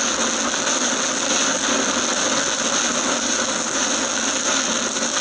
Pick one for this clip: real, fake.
real